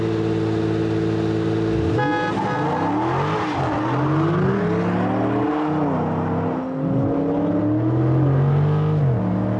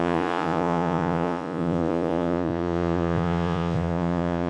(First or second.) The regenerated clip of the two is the second